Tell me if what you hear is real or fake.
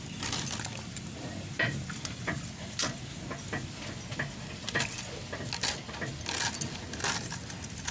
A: real